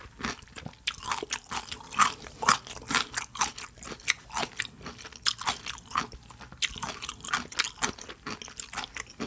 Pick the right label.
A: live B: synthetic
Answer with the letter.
A